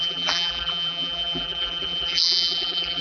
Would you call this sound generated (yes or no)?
yes